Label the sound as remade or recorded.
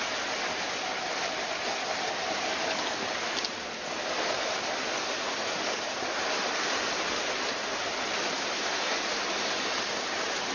recorded